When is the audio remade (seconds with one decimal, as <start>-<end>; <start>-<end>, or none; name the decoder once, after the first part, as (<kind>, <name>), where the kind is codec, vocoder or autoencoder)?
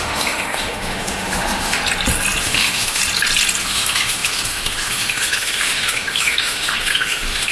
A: 0.0-1.8 (autoencoder, DAC-VAE); 2.4-3.0; 3.6-7.5